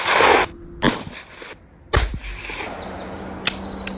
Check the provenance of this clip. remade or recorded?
recorded